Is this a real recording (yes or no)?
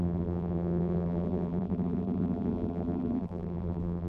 no